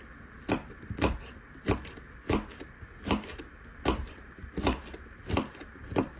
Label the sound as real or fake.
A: real